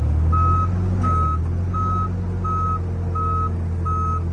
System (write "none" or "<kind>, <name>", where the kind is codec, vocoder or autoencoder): none